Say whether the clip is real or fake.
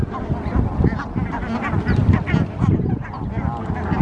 real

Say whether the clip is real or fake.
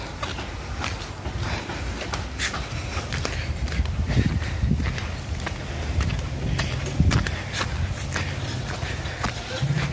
real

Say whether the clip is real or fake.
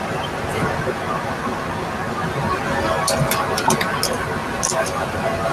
real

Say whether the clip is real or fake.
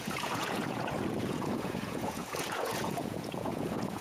fake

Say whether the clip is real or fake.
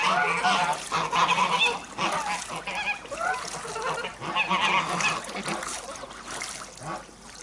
real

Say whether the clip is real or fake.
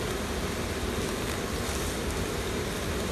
real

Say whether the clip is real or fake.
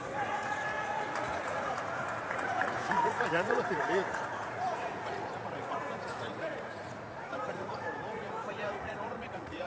fake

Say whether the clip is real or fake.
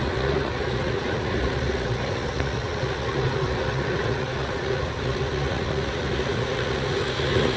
fake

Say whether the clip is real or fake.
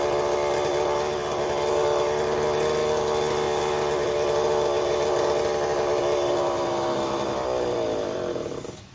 real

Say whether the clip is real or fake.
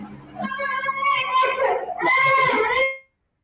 real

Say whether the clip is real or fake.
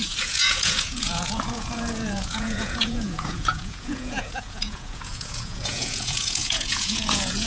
fake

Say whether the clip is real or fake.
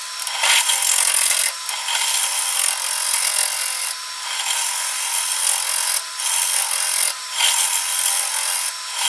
real